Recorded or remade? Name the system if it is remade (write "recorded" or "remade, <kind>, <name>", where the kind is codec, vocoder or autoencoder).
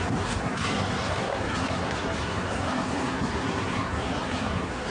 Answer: remade, codec, SNAC